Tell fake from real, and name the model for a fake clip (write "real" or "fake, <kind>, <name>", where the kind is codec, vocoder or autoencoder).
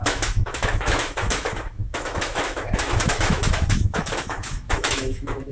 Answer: fake, autoencoder, DAC-VAE